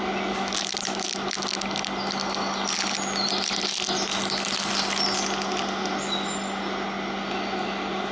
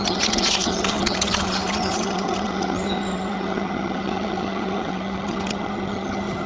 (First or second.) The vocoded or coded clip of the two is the second